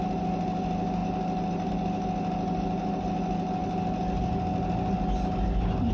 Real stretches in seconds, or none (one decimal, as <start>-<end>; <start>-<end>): 0.0-5.9